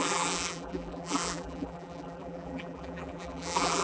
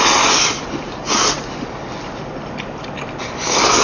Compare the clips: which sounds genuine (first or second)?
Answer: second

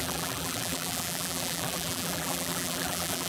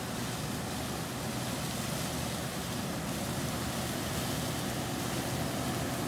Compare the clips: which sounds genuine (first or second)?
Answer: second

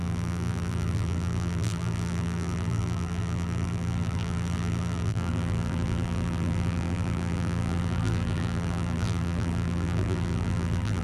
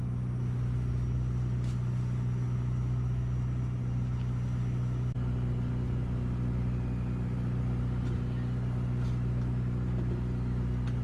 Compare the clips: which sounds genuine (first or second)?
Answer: second